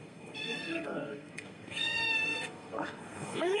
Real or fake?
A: fake